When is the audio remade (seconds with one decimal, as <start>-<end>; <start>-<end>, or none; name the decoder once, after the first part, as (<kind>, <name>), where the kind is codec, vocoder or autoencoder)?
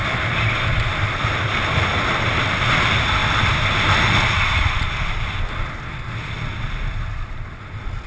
none